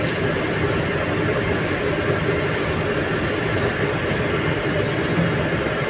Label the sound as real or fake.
real